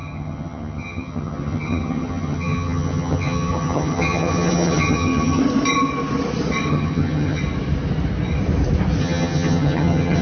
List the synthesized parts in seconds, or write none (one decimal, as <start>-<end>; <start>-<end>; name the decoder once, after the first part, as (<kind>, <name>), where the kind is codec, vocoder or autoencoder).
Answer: 0.0-5.4 (vocoder, HiFi-GAN); 6.7-7.4; 9.0-10.2